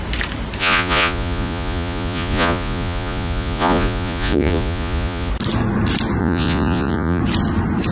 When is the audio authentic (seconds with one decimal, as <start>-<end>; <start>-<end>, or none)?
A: 0.0-0.6; 5.3-6.2; 7.2-7.9